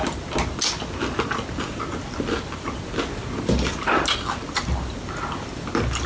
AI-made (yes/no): no